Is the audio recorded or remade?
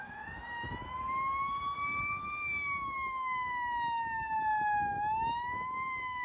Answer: remade